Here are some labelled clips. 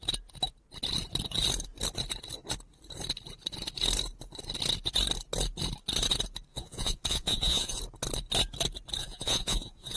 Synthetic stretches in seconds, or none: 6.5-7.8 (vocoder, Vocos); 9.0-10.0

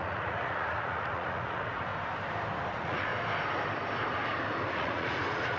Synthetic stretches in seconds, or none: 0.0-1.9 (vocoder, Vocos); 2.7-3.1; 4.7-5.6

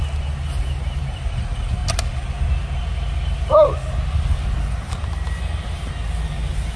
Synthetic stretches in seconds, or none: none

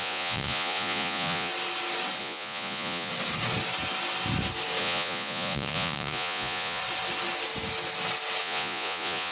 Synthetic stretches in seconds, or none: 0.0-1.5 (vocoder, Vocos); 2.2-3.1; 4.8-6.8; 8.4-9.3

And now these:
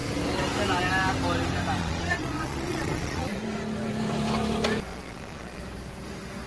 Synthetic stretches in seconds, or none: 1.8-3.4 (vocoder, Vocos); 4.9-5.6

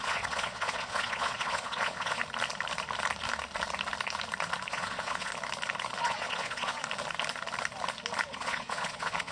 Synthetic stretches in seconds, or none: 0.0-2.2 (vocoder, Vocos); 4.7-5.3; 6.0-6.8; 8.3-9.3

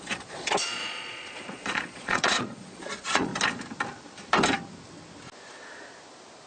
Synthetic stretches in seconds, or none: 0.0-3.3 (vocoder, Vocos)